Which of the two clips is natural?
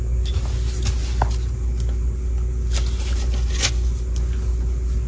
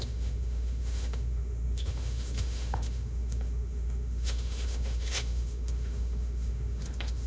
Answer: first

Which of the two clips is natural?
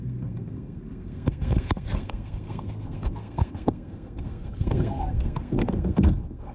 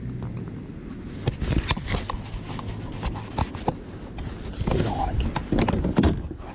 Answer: second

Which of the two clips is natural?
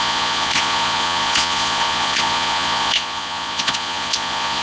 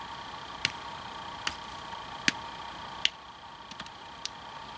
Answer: second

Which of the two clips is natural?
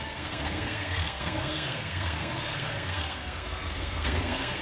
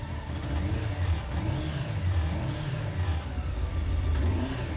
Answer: second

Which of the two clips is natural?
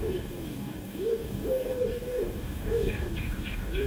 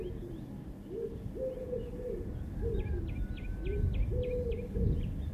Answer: second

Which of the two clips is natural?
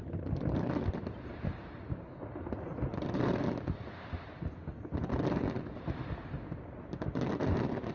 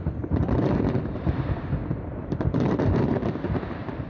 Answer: first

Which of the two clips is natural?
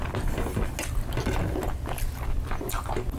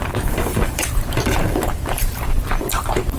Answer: first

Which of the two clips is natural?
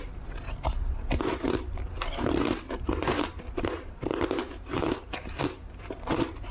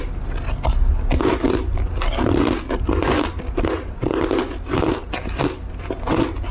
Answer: second